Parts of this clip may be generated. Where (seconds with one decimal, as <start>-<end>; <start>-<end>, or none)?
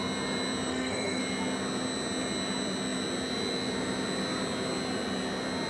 0.7-1.2